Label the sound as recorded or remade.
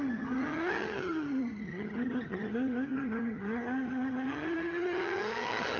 remade